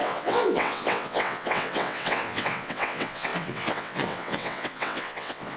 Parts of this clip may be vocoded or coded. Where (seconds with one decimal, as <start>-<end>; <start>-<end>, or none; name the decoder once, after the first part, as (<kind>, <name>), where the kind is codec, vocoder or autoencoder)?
0.0-5.6 (vocoder, WaveNeXt)